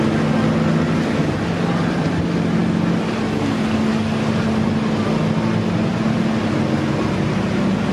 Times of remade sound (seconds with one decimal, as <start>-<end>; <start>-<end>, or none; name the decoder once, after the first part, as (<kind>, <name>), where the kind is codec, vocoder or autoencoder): none